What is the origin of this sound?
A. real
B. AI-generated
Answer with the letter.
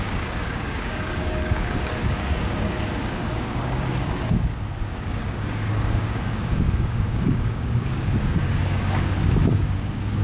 B